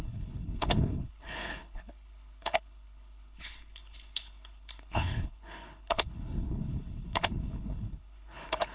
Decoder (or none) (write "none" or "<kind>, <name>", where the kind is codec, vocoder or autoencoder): codec, HILCodec